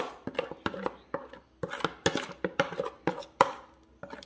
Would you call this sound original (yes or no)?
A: yes